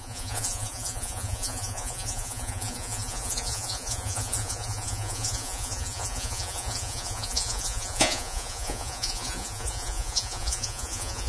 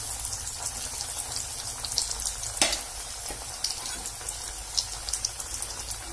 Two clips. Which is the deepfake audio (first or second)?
first